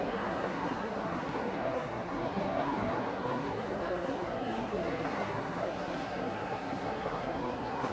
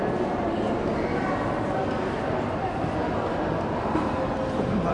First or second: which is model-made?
first